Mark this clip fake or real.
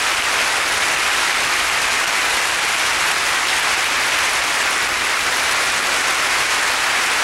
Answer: real